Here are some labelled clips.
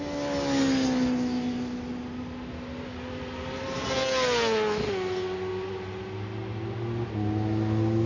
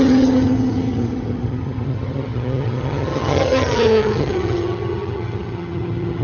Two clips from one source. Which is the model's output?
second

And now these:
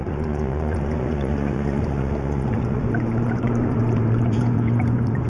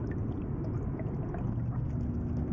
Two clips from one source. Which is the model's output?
first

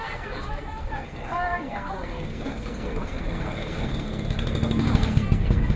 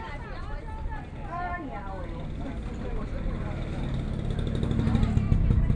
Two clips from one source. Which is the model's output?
first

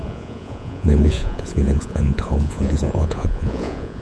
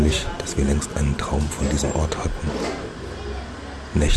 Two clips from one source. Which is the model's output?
first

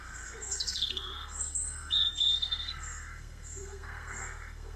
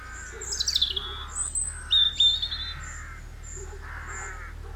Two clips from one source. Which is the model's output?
first